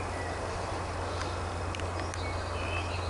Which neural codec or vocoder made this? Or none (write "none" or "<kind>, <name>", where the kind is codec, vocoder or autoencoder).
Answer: none